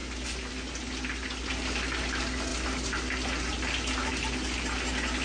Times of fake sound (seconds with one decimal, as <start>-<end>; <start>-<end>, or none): none